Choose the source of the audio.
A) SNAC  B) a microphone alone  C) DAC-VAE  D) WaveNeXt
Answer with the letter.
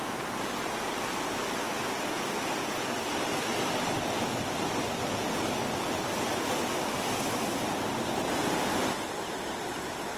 B